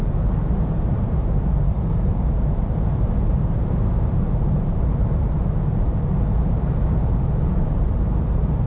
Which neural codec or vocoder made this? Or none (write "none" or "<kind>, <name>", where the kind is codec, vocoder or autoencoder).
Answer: vocoder, BigVGAN v2